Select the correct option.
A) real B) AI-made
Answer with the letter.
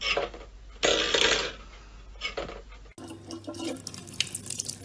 A